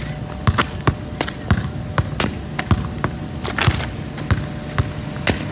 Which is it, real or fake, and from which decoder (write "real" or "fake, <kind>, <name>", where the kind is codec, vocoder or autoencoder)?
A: real